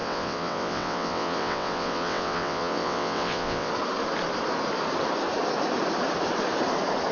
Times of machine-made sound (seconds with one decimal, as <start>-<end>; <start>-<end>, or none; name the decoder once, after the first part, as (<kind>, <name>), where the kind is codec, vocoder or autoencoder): 0.0-3.7 (vocoder, WaveNeXt)